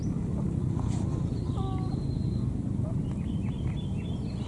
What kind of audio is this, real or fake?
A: real